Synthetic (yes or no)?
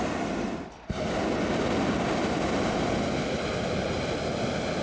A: no